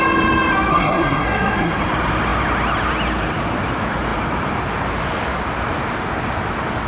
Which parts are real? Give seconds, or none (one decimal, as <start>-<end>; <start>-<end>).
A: 0.0-0.7; 1.7-6.9